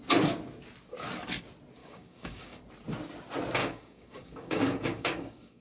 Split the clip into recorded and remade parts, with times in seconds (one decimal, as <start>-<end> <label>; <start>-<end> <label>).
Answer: 0.0-1.8 recorded; 1.8-2.6 remade; 2.6-3.6 recorded; 3.6-5.6 remade